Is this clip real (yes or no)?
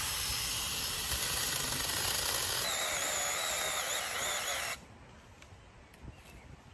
yes